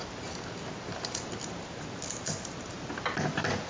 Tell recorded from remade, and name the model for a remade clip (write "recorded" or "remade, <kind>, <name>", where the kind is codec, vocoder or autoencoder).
recorded